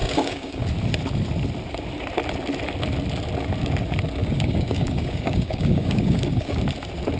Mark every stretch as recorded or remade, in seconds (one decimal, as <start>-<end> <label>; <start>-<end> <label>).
0.0-0.6 remade; 0.6-4.2 recorded; 4.2-6.6 remade; 6.6-7.2 recorded